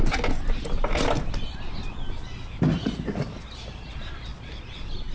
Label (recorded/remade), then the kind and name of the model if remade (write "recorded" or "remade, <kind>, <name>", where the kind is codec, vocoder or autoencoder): recorded